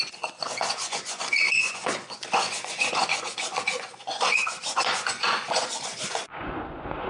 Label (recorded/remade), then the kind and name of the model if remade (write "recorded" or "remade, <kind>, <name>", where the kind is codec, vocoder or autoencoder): remade, vocoder, Vocos